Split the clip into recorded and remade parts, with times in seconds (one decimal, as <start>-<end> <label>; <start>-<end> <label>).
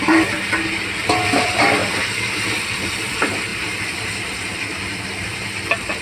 0.0-1.8 remade; 1.8-2.4 recorded; 2.4-3.5 remade; 3.5-6.0 recorded